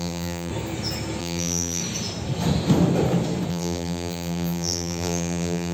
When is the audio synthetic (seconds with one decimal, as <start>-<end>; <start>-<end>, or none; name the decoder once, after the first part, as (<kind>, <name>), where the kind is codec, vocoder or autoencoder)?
0.0-0.5 (vocoder, BigVGAN v2); 1.2-1.8; 3.5-5.7